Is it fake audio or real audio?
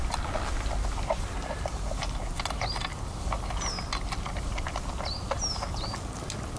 real